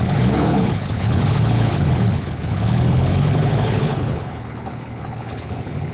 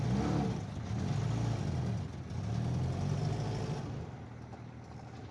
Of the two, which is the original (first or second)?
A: second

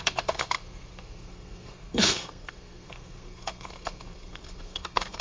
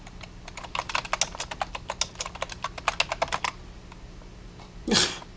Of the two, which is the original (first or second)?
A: second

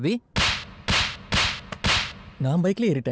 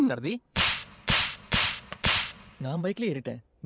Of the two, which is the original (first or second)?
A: first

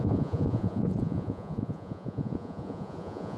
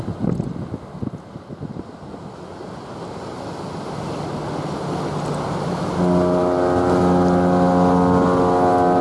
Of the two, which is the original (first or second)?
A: second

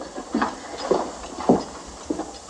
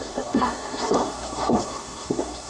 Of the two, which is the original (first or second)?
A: first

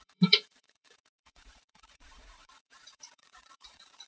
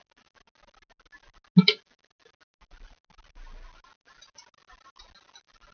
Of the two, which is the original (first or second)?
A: second